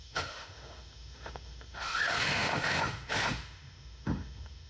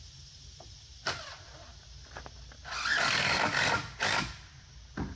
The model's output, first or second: first